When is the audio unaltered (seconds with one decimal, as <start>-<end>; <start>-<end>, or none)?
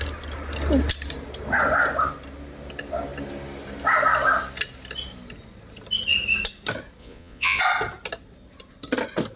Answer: 0.0-7.0; 7.6-9.4